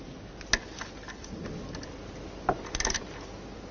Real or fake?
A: real